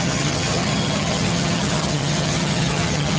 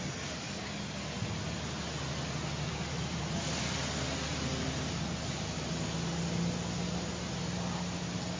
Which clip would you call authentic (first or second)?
second